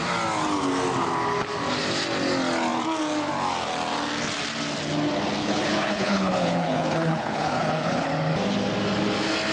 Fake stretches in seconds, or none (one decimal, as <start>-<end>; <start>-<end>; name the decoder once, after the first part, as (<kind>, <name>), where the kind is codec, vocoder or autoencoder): 5.4-8.1 (codec, HILCodec)

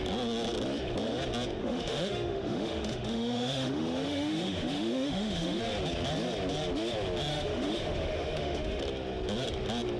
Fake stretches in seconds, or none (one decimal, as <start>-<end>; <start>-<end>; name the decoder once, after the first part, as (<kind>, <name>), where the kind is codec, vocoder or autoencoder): 1.6-5.6 (autoencoder, DAC-VAE); 7.3-8.8

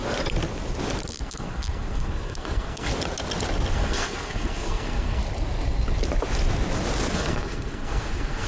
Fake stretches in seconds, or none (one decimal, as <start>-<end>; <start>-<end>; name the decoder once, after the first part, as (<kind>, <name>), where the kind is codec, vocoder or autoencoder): 1.1-2.9 (codec, SNAC); 3.7-5.2; 7.1-8.5